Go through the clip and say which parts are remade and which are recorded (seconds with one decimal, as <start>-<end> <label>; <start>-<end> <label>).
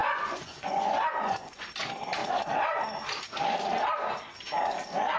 0.0-1.7 remade; 1.7-5.2 recorded